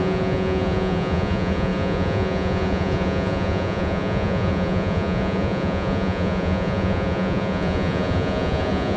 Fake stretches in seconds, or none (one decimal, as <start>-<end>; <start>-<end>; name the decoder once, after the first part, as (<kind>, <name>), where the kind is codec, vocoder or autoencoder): 0.0-9.0 (vocoder, Vocos)